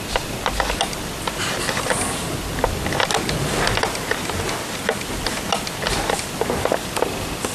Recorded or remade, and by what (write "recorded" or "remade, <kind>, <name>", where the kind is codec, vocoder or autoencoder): recorded